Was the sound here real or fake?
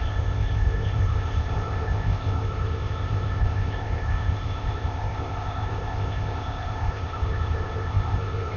fake